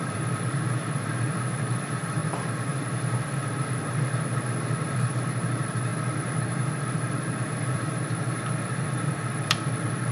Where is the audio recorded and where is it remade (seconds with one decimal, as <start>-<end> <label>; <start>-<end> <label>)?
0.0-10.1 remade